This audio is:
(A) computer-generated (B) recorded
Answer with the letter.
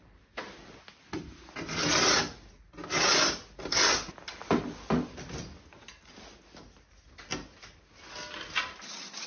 B